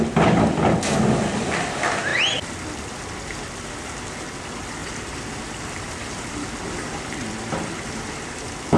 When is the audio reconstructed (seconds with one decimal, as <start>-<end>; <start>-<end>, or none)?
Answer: 4.8-8.8